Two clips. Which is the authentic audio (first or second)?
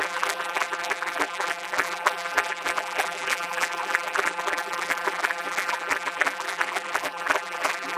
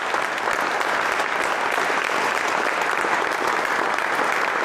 second